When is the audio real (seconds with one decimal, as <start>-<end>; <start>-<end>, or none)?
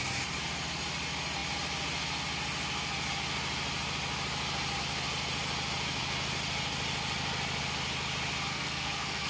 0.0-8.5